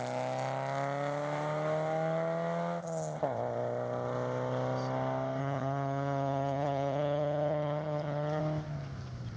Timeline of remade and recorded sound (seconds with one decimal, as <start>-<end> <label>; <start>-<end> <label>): 0.0-5.4 recorded; 5.4-8.4 remade; 8.4-9.4 recorded

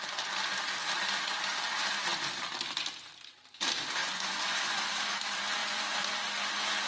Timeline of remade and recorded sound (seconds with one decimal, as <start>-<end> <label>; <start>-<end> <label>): 0.0-4.0 recorded; 4.0-5.0 remade; 5.0-5.6 recorded; 5.6-6.1 remade; 6.1-6.9 recorded

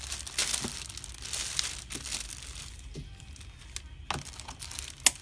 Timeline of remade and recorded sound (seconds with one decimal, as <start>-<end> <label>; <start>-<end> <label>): 0.0-5.2 recorded

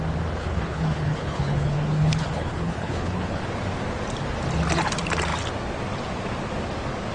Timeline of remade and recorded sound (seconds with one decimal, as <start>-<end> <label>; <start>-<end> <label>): 0.0-0.4 recorded; 0.4-3.4 remade; 3.4-7.1 recorded

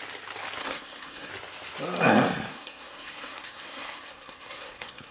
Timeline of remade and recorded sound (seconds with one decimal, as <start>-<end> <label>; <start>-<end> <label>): 0.0-0.6 recorded; 0.6-1.3 remade; 1.3-2.5 recorded; 2.5-5.1 remade